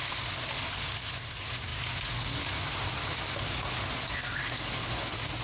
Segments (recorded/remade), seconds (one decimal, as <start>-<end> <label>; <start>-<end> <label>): 0.0-5.4 recorded